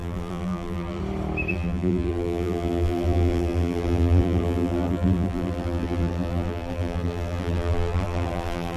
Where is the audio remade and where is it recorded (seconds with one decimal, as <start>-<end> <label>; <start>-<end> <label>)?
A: 0.0-1.0 remade; 1.0-1.5 recorded; 1.5-8.8 remade